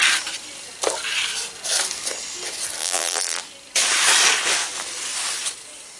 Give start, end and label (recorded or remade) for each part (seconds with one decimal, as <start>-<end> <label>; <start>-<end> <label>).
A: 0.0-2.8 recorded; 2.8-3.4 remade; 3.4-6.0 recorded